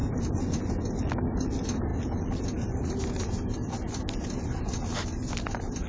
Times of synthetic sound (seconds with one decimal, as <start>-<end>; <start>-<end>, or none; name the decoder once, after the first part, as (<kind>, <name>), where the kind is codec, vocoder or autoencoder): none